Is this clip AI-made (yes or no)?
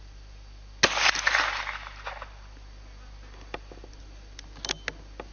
no